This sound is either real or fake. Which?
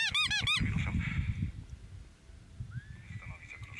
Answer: real